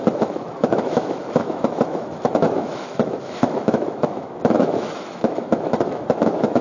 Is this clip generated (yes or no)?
yes